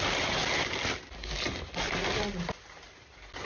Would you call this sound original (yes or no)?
yes